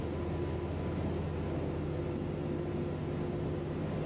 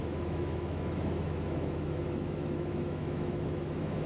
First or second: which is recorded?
first